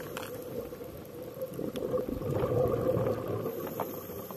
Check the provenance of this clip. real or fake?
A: real